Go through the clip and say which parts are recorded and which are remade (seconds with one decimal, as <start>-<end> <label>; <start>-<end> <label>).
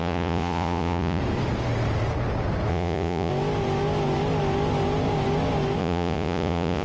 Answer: 0.0-1.2 remade; 1.2-2.7 recorded; 2.7-3.3 remade; 3.3-5.8 recorded; 5.8-6.8 remade